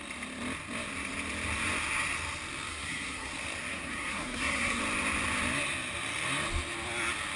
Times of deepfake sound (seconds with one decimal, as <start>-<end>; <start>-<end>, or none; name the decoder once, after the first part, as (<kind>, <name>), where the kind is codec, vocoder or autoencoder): 2.7-3.3 (codec, SNAC); 3.7-4.8